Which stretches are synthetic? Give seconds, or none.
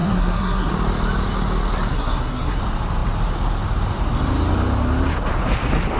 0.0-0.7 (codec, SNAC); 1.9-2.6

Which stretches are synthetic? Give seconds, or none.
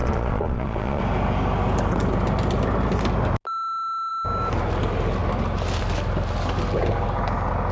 0.0-1.0 (vocoder, Vocos)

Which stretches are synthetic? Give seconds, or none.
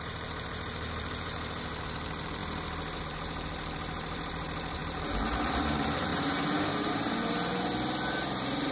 0.0-2.4 (vocoder, BigVGAN v2); 3.0-8.7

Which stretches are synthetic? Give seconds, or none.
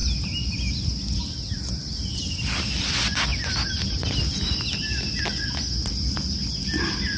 none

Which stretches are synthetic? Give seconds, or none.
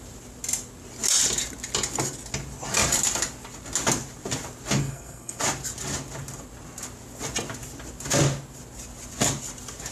4.8-5.4 (codec, SNAC)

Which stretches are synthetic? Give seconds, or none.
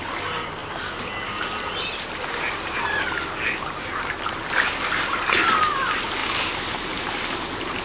0.0-0.6 (vocoder, BigVGAN v2); 5.3-6.2; 7.3-7.8